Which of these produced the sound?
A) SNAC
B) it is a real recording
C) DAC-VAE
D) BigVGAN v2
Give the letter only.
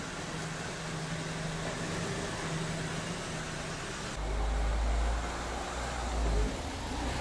B